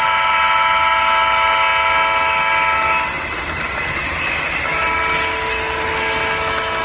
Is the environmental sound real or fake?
real